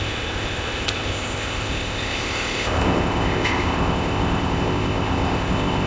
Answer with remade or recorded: remade